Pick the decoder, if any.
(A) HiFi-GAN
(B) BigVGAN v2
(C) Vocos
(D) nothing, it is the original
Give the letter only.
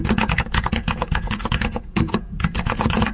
C